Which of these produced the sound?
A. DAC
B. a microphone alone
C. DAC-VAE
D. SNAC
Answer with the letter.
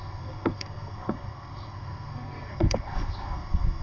D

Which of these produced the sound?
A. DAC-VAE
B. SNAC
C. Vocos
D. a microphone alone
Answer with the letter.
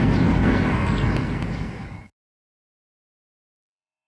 B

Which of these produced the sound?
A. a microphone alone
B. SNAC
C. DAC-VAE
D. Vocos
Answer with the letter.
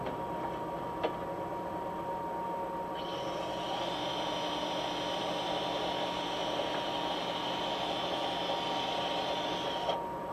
A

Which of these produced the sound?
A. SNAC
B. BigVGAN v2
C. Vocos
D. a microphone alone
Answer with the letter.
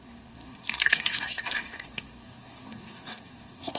A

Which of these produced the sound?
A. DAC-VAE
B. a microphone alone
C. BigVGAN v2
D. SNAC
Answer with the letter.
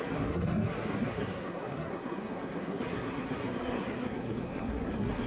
D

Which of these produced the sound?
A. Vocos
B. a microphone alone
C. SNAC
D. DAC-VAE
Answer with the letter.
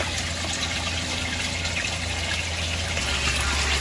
B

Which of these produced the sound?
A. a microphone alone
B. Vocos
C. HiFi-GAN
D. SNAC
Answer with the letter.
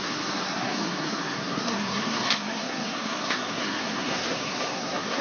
D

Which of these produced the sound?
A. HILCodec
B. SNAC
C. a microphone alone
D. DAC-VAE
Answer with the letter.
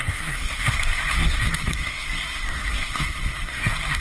B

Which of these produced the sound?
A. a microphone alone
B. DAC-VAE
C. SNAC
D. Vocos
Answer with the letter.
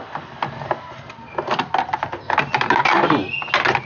A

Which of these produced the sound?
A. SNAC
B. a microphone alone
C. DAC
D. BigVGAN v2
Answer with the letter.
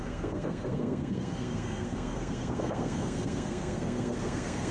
A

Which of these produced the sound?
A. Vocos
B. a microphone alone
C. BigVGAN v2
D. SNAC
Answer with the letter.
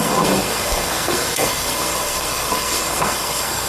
D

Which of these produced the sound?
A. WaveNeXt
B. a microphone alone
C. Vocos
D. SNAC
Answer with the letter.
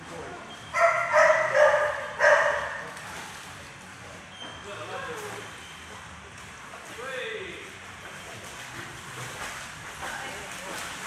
B